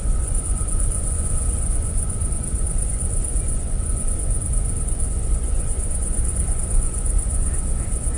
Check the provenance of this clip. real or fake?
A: fake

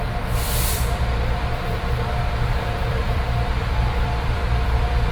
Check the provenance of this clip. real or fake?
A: fake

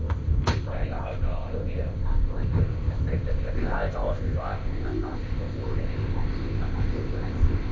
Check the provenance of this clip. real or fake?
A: fake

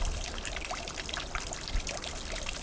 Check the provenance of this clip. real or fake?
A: real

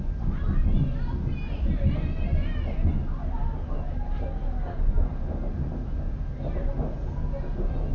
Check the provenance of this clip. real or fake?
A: real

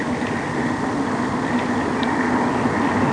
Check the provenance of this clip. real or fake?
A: real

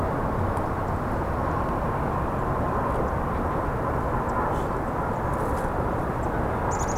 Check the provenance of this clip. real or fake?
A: real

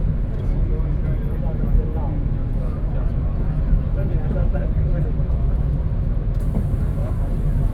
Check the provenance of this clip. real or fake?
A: real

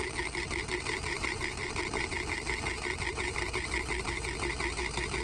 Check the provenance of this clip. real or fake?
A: real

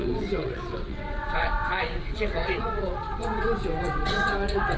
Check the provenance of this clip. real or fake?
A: fake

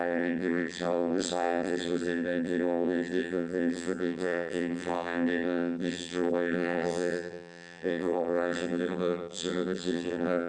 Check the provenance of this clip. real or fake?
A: fake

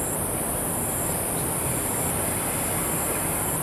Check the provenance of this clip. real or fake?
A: fake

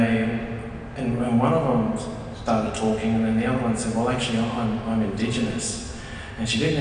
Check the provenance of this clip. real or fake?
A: real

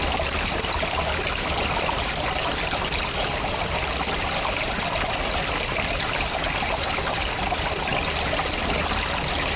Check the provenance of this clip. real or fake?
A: real